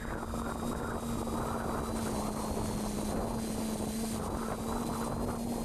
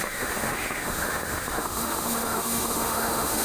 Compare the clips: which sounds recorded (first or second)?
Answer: first